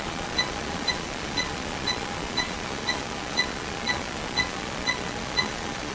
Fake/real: fake